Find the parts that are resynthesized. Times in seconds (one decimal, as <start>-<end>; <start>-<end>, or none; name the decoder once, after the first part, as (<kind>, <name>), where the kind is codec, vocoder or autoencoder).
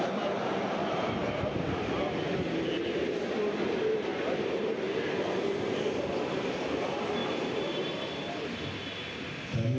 0.0-1.6 (vocoder, BigVGAN v2); 4.1-6.0; 7.2-8.3